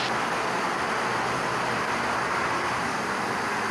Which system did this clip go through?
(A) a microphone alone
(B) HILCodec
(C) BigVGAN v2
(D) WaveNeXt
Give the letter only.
A